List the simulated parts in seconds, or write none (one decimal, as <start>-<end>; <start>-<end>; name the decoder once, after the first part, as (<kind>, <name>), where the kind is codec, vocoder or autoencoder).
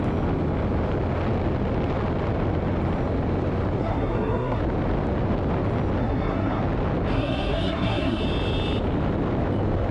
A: 3.8-4.6 (codec, SNAC); 6.0-6.6; 7.1-8.2